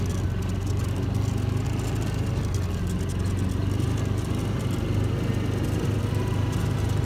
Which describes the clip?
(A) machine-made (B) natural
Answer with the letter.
B